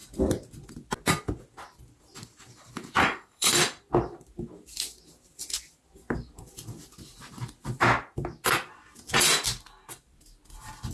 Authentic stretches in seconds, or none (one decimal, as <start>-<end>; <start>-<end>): 0.0-3.0; 3.5-10.9